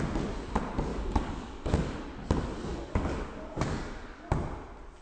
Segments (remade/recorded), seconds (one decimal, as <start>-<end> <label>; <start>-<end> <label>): 0.0-0.9 recorded; 0.9-2.0 remade; 2.0-2.7 recorded; 2.7-4.3 remade; 4.3-5.0 recorded